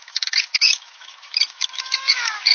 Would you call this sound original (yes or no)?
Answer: no